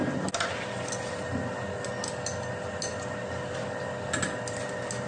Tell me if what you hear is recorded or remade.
recorded